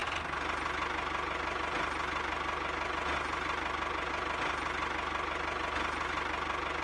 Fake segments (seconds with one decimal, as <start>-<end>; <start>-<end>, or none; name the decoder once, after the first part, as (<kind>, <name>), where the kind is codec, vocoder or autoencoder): none